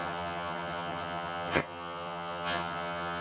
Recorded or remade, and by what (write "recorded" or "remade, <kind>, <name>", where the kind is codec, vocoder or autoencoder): remade, vocoder, HiFi-GAN